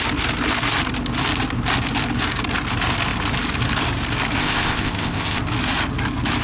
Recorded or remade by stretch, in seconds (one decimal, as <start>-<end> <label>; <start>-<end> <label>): 0.0-4.4 recorded; 4.4-5.4 remade; 5.4-6.4 recorded